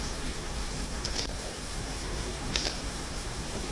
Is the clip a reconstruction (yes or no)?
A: yes